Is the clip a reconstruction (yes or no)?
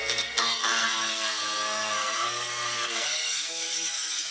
yes